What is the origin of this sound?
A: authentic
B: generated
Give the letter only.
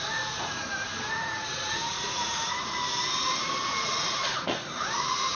B